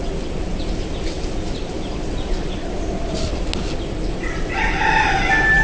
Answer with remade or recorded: recorded